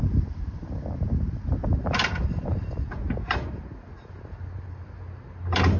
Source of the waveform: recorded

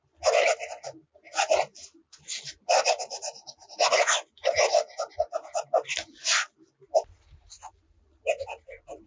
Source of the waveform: recorded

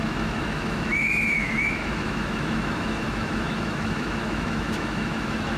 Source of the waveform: remade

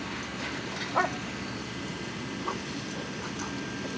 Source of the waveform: recorded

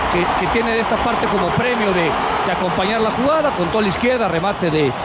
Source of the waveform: recorded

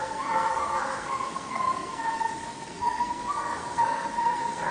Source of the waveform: remade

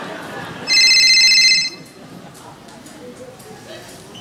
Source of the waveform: recorded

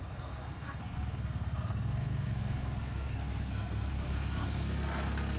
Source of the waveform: remade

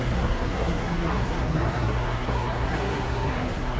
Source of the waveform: remade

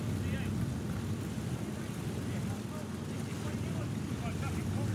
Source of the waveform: recorded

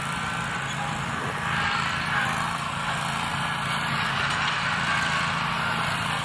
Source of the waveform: recorded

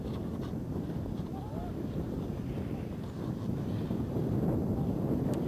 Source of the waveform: recorded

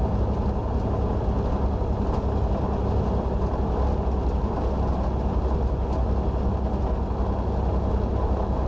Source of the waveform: recorded